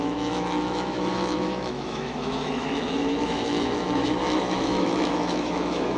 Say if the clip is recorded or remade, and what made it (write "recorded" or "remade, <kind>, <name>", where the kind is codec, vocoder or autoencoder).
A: remade, autoencoder, DAC-VAE